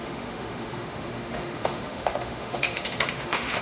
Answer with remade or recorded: remade